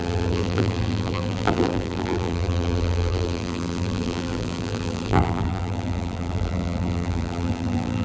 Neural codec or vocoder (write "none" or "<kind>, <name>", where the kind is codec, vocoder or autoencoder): vocoder, BigVGAN v2